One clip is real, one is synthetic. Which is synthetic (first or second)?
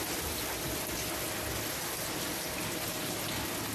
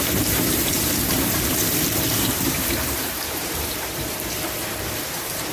second